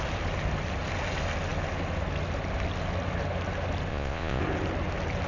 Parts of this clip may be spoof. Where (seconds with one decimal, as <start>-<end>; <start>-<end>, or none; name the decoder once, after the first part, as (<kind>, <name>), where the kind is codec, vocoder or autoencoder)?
3.9-4.4 (vocoder, Vocos)